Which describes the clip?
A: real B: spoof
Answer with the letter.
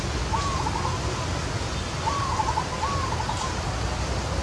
A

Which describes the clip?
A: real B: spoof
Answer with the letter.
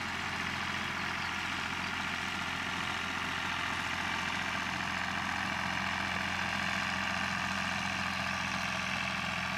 A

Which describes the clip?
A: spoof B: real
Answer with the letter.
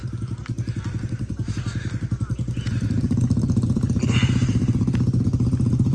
B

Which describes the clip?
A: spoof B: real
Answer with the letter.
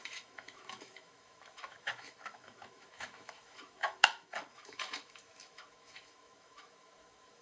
A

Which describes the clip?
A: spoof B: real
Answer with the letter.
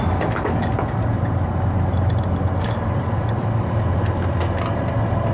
B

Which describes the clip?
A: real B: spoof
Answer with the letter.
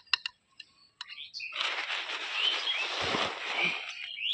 A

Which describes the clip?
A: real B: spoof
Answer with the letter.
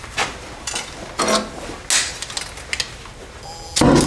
A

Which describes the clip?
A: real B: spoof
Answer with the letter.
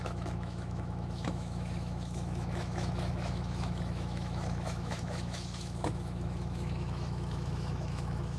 B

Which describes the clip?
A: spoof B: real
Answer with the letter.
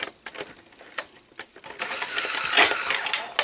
B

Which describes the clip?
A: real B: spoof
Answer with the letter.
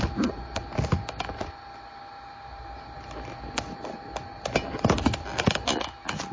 A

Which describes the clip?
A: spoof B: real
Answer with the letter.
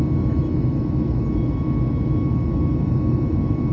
A